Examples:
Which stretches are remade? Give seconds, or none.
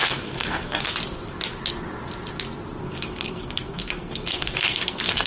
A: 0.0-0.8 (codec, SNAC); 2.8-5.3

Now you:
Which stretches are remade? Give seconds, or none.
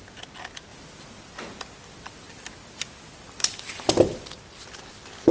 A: 0.0-0.7 (vocoder, BigVGAN v2); 3.9-5.3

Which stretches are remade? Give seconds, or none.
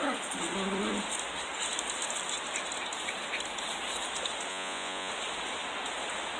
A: 4.5-5.1 (vocoder, Vocos)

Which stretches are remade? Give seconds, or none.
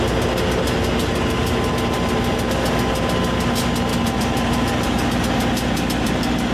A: 3.9-5.1 (vocoder, BigVGAN v2)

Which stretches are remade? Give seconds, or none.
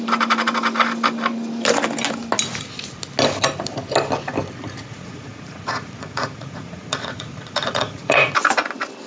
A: 4.9-8.3 (vocoder, Vocos)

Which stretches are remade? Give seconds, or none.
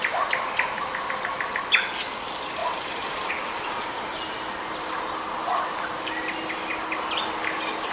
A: 2.6-3.3 (vocoder, BigVGAN v2)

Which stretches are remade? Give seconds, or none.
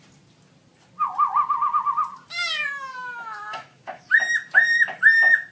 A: 2.7-4.0 (autoencoder, DAC-VAE)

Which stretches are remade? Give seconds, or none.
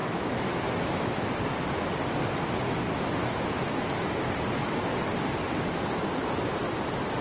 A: 0.0-1.4 (autoencoder, DAC-VAE); 3.2-4.3